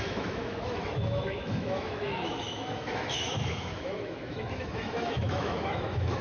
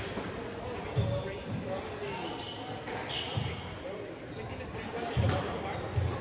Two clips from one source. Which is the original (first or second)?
second